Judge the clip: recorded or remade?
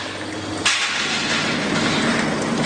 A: recorded